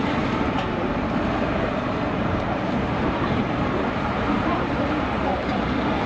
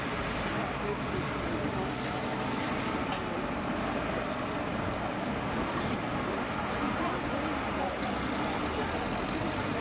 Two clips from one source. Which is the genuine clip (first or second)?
second